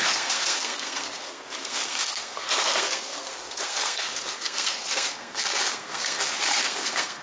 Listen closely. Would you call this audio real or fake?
fake